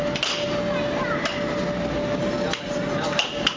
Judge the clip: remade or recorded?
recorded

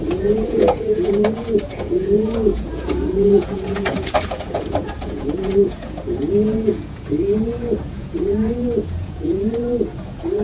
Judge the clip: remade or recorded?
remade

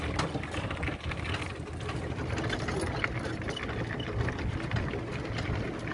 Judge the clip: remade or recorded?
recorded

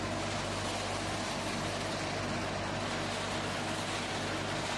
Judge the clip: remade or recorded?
recorded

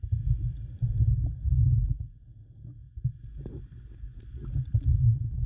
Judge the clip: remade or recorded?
recorded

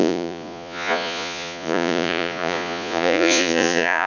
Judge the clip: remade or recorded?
remade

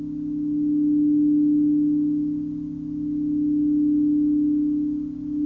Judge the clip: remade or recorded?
recorded